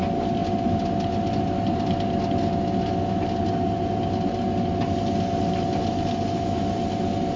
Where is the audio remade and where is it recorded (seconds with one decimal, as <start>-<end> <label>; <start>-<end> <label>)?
0.0-7.4 recorded